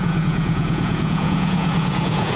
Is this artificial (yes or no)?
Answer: yes